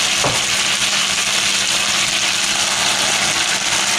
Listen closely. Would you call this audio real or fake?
real